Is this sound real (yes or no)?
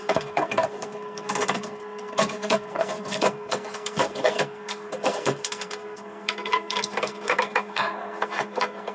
no